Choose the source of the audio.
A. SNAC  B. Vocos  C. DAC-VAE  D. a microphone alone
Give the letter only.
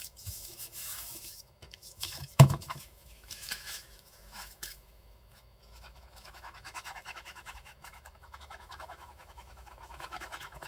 C